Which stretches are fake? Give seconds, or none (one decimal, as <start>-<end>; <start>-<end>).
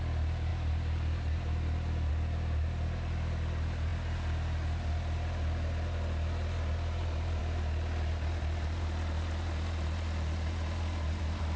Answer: none